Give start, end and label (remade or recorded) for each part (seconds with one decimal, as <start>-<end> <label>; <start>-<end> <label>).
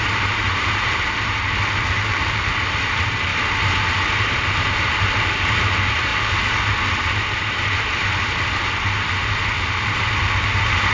0.0-3.3 remade; 3.3-4.2 recorded; 4.2-6.1 remade; 6.1-9.7 recorded; 9.7-10.9 remade